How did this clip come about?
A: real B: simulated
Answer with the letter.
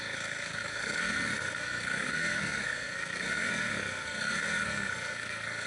B